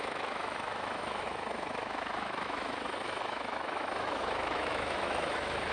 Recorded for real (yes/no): no